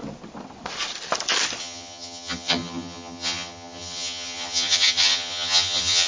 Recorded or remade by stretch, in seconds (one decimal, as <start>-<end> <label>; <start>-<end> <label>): 0.0-1.6 recorded; 1.6-6.1 remade